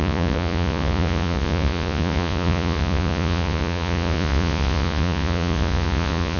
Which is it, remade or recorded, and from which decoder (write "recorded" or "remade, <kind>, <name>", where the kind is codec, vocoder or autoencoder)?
remade, vocoder, Vocos